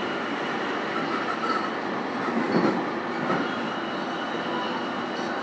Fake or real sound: real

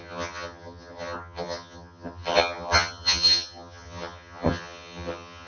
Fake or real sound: fake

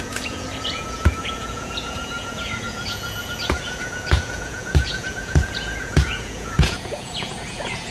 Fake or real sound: fake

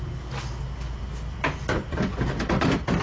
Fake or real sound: real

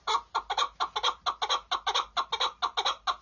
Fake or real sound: real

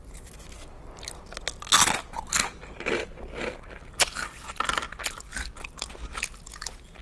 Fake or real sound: real